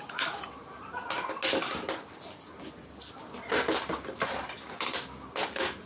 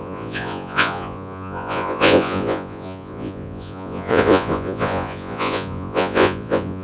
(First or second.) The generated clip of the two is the second